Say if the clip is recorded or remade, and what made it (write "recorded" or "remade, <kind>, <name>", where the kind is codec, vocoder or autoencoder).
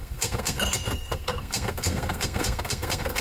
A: remade, codec, SNAC